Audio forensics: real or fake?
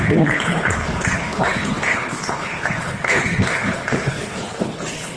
fake